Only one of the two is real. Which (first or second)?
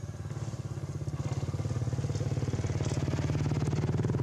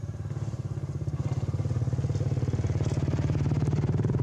first